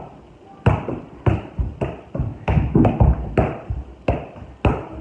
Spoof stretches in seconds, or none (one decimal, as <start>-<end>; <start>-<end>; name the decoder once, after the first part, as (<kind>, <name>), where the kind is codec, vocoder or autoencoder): 2.3-2.9 (autoencoder, DAC-VAE)